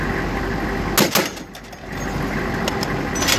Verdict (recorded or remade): recorded